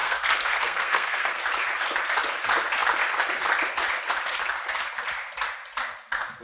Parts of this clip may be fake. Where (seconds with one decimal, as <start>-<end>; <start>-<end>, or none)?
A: 0.0-1.4